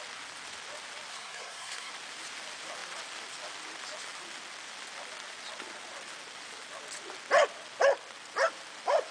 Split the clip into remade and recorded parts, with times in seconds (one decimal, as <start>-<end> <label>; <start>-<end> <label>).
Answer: 0.0-1.1 recorded; 1.1-1.9 remade; 1.9-9.1 recorded